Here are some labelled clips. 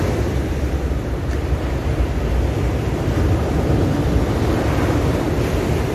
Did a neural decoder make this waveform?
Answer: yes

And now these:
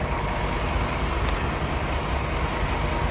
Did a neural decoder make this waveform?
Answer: no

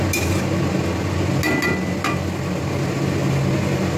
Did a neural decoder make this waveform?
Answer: no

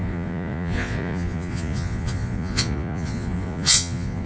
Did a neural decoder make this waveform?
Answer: yes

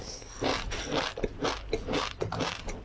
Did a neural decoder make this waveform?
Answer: no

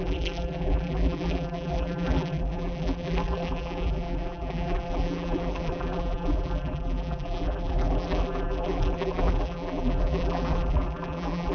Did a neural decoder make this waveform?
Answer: yes